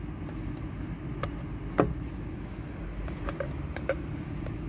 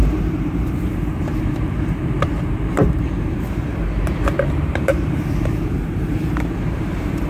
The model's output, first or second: second